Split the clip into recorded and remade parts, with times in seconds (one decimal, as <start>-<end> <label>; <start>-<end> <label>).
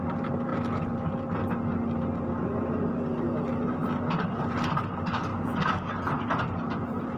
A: 0.0-5.3 recorded; 5.3-5.9 remade; 5.9-7.2 recorded